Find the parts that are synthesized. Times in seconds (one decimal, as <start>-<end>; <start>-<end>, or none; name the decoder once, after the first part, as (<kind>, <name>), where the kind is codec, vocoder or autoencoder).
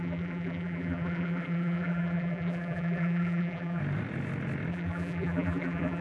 0.0-3.8 (vocoder, BigVGAN v2); 4.7-6.0